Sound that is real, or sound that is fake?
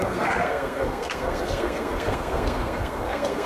fake